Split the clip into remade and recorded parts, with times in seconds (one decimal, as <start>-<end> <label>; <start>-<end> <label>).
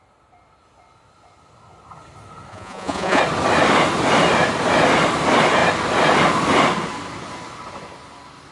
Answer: 0.0-2.5 recorded; 2.5-3.2 remade; 3.2-8.5 recorded